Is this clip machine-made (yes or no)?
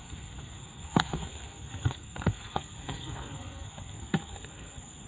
yes